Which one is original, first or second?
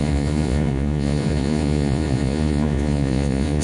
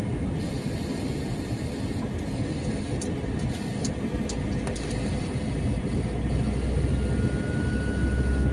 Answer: second